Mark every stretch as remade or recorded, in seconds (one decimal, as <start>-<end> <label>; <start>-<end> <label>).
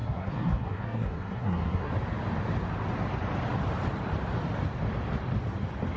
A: 0.0-1.9 remade; 1.9-6.0 recorded